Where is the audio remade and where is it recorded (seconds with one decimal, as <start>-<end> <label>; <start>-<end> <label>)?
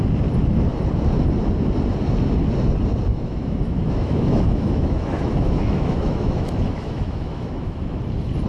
0.0-3.1 recorded; 3.1-8.0 remade; 8.0-8.5 recorded